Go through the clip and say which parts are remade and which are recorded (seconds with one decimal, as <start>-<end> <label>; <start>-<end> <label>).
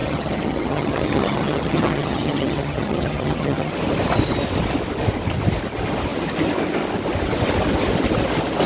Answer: 0.0-3.7 remade; 3.7-8.7 recorded